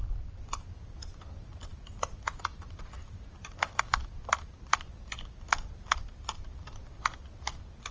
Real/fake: real